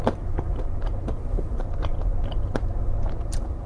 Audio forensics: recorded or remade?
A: remade